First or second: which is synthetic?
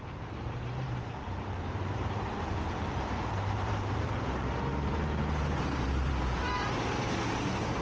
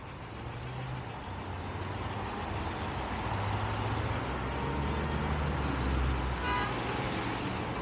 first